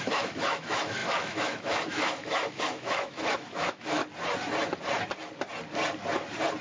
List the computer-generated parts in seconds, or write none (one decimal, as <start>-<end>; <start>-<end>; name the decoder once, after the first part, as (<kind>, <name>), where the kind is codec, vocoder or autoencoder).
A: 0.0-4.0 (autoencoder, DAC-VAE)